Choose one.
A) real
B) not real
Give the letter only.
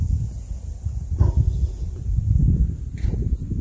A